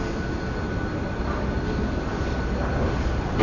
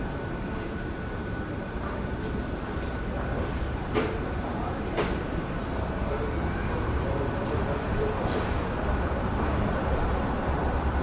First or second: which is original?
first